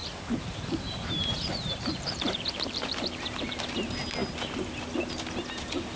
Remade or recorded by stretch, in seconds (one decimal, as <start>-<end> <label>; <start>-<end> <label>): 0.0-3.6 remade; 3.6-6.0 recorded